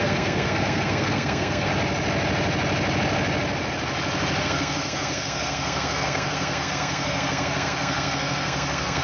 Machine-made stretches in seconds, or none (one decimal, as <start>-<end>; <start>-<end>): 0.0-1.7; 4.4-9.0